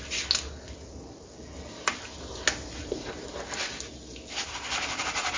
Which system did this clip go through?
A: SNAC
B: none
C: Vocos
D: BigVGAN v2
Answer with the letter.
B